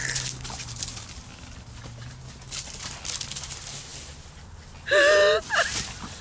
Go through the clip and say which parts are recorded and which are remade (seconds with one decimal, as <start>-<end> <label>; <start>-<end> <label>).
0.0-6.2 recorded